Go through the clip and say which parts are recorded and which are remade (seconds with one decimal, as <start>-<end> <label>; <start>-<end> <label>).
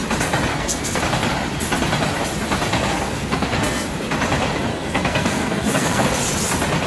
0.0-0.5 recorded; 0.5-1.0 remade; 1.0-2.7 recorded; 2.7-3.9 remade; 3.9-4.7 recorded; 4.7-6.1 remade; 6.1-6.9 recorded